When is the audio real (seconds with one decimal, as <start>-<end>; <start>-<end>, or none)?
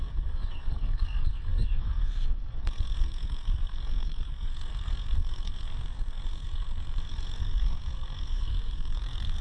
none